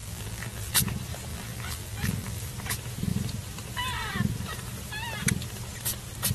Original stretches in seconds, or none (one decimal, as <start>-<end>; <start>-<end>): 0.8-1.3; 2.5-6.3